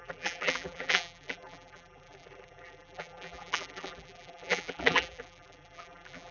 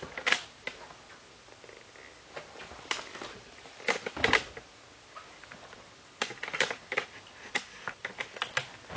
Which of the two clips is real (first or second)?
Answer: second